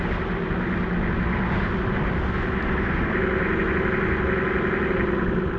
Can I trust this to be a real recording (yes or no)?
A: yes